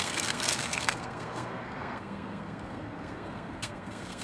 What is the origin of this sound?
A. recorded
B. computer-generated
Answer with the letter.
B